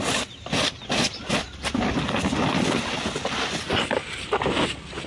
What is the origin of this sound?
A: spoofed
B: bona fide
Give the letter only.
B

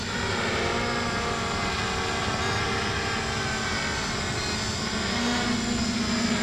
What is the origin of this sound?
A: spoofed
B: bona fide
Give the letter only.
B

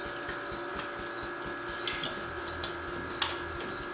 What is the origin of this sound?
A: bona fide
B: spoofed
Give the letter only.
A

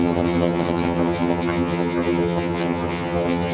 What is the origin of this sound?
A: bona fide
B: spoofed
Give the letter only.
B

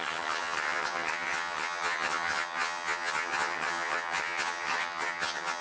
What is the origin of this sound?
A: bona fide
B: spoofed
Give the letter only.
B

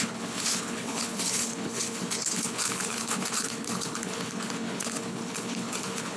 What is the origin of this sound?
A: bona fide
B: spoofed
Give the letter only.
B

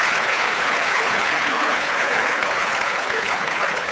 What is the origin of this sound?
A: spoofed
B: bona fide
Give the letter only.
A